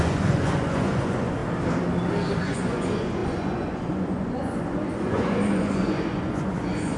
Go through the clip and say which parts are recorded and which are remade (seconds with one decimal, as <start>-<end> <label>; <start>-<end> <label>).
0.0-1.4 remade; 1.4-2.4 recorded; 2.4-7.0 remade